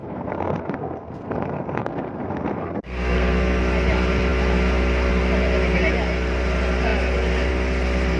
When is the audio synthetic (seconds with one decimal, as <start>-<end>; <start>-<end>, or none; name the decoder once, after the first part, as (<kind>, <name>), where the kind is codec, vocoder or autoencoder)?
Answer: 0.0-3.6 (codec, SNAC)